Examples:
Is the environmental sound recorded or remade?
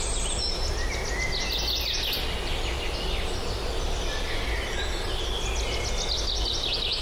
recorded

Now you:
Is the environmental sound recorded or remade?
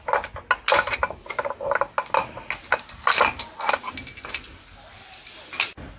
recorded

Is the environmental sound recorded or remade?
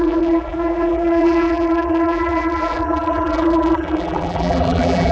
remade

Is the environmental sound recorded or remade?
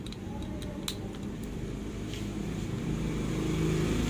recorded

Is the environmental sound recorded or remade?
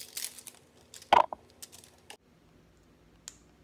recorded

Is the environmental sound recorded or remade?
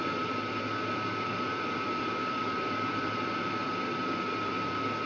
remade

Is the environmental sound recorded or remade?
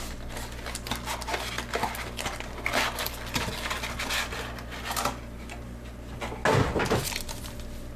recorded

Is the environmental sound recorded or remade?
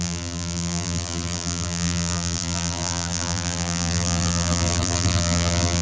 remade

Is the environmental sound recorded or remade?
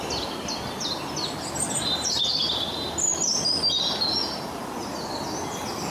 recorded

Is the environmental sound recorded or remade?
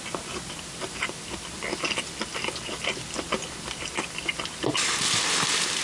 recorded